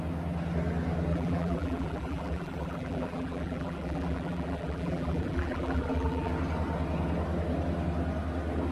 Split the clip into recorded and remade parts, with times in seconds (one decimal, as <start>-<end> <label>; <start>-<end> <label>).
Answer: 0.0-1.1 recorded; 1.1-6.3 remade; 6.3-8.7 recorded